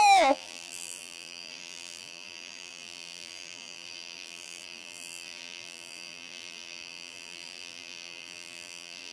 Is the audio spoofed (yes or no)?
yes